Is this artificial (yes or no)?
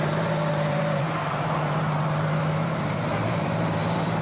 yes